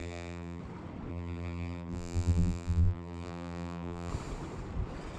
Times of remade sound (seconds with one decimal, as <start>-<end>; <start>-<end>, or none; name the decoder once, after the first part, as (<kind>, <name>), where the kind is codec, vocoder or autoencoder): 0.0-0.6 (vocoder, BigVGAN v2); 1.1-4.1